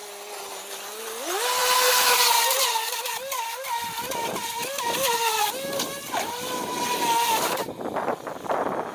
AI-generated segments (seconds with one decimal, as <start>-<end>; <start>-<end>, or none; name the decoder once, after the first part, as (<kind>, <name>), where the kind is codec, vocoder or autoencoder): none